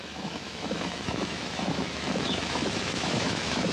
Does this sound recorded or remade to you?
remade